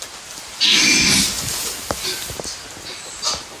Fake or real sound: real